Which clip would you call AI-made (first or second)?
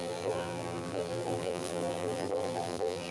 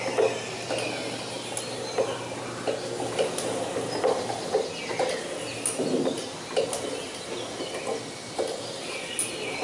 first